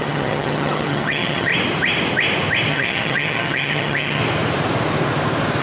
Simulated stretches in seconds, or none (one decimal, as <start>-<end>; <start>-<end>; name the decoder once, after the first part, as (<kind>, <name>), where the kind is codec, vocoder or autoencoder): 0.0-1.5 (vocoder, HiFi-GAN); 2.7-4.2